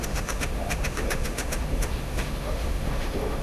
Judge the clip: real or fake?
fake